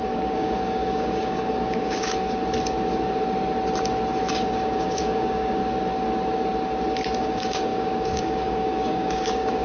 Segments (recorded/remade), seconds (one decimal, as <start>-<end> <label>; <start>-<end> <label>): 0.0-2.4 remade; 2.4-4.3 recorded; 4.3-5.6 remade; 5.6-7.2 recorded; 7.2-9.6 remade